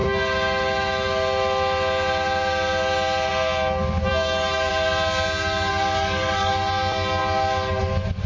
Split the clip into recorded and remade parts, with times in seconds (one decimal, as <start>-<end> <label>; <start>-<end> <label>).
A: 0.0-4.1 recorded; 4.1-4.7 remade; 4.7-5.7 recorded; 5.7-6.5 remade; 6.5-8.3 recorded